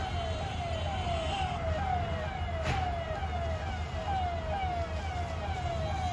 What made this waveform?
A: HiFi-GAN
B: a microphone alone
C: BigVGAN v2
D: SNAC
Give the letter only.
B